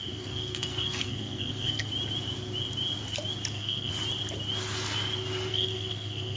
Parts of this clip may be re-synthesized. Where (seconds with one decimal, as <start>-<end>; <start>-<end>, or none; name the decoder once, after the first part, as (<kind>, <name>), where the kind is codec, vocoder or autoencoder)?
0.0-1.9 (codec, SNAC); 3.5-3.9; 5.5-6.4